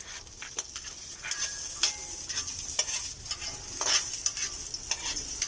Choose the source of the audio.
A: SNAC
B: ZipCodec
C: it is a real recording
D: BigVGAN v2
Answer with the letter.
C